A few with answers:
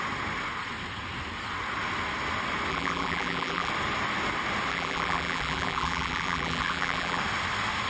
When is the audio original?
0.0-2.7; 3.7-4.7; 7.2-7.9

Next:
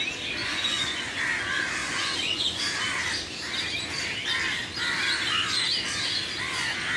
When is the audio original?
0.0-0.4; 1.2-1.8; 2.6-7.0

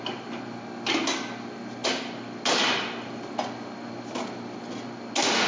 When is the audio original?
0.0-5.5

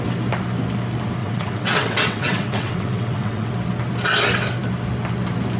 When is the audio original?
0.0-1.2; 3.5-5.6

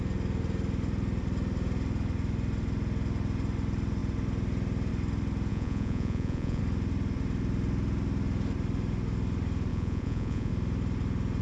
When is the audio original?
0.0-5.5; 6.6-9.7; 10.5-11.4

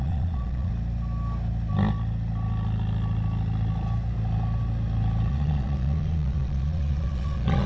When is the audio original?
0.7-5.3

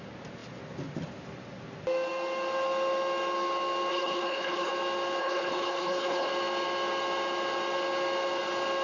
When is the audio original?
0.0-3.9; 4.7-5.2; 6.3-8.8